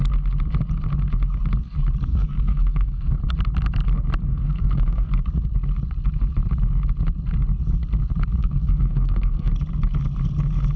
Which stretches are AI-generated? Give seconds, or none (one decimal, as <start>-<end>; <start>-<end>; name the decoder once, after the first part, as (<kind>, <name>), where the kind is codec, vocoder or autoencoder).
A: 2.1-3.2 (codec, SNAC); 4.3-5.1; 8.4-9.5